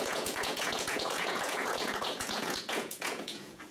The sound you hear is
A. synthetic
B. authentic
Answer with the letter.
A